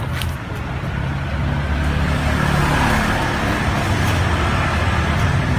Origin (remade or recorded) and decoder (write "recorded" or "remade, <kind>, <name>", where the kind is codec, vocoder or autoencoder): recorded